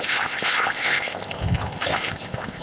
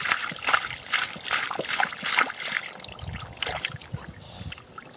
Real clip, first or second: second